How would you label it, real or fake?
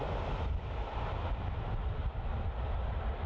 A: real